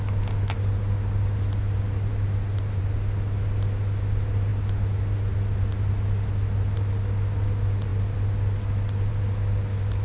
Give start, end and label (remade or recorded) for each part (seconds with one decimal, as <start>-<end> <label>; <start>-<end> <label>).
0.0-10.0 recorded